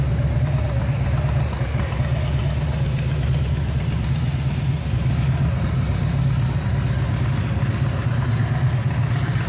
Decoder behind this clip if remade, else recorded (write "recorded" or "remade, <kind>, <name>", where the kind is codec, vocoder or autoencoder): recorded